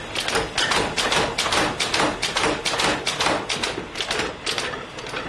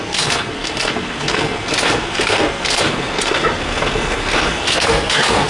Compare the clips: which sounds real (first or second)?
first